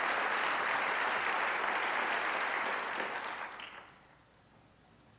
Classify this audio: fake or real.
real